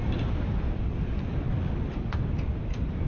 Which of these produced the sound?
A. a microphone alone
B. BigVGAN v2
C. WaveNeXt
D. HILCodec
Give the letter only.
A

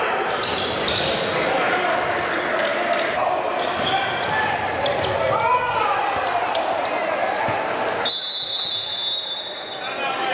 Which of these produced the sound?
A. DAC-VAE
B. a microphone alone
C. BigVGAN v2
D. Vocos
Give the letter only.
B